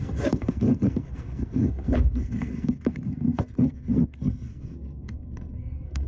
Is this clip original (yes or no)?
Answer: no